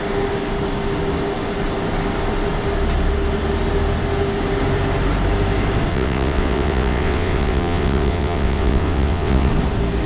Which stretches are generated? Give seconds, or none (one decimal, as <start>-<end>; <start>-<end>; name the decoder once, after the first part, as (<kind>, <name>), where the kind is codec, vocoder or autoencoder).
5.9-9.5 (vocoder, WaveNeXt)